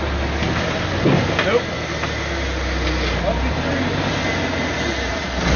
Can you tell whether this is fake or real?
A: real